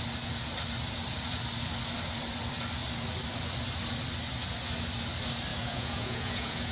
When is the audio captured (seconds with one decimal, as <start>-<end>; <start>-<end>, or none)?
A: 0.0-5.5